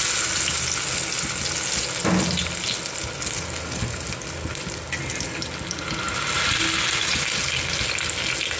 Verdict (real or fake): real